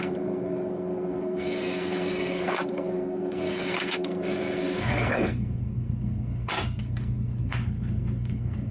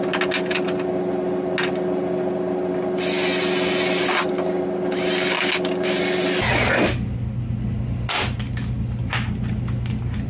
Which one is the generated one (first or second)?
first